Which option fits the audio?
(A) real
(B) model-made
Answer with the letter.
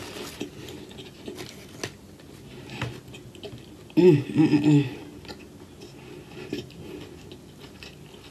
A